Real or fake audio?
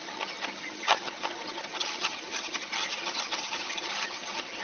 fake